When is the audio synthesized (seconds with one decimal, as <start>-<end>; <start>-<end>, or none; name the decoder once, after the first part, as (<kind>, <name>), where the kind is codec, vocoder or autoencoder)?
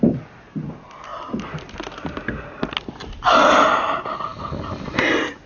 none